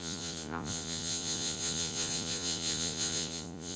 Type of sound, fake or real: fake